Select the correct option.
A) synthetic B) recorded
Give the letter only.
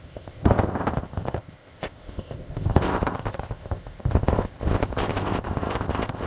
A